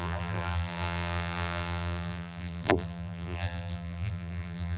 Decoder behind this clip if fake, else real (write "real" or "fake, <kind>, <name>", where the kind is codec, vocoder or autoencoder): fake, vocoder, BigVGAN v2